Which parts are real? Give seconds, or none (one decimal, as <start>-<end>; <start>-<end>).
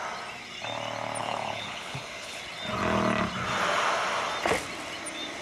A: 0.0-1.2; 2.4-5.4